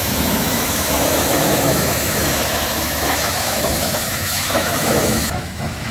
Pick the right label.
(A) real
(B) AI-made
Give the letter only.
B